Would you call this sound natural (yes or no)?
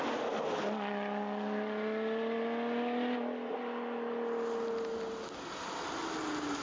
yes